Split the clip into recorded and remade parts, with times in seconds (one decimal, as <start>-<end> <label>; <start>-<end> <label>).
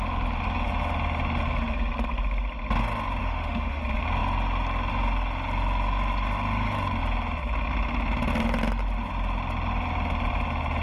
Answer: 0.0-3.2 recorded; 3.2-3.8 remade; 3.8-10.8 recorded